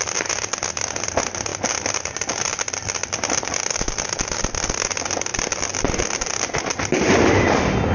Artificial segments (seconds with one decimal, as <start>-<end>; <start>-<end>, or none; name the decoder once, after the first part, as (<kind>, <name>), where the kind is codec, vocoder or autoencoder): 1.5-4.4 (vocoder, BigVGAN v2)